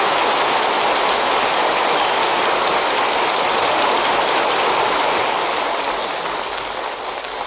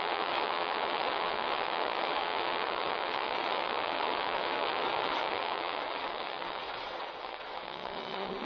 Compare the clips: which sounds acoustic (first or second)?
first